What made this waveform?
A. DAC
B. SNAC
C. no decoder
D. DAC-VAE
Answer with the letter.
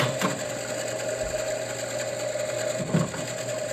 C